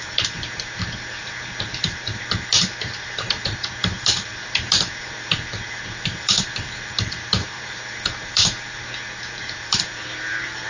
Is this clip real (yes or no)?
no